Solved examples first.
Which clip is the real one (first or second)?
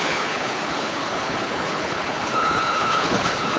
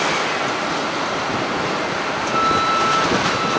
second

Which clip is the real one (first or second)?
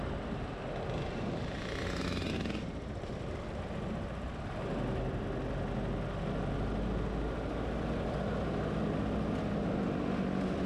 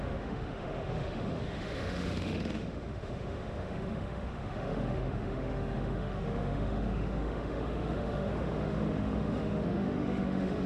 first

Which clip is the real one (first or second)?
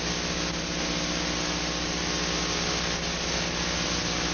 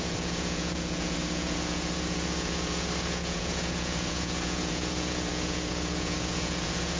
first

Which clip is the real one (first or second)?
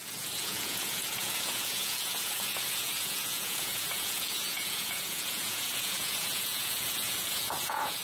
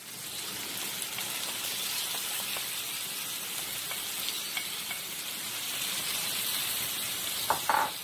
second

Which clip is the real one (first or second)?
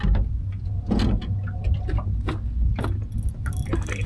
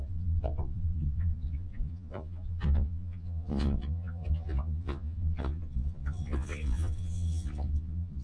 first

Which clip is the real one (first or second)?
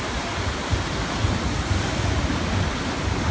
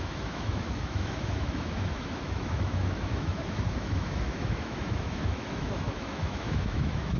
first